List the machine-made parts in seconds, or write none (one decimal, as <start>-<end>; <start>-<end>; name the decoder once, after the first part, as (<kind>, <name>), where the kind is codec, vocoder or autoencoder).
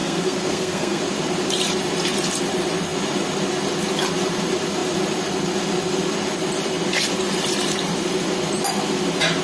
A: 0.0-1.0 (codec, SNAC)